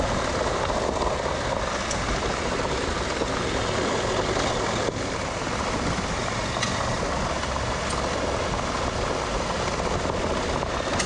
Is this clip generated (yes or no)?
no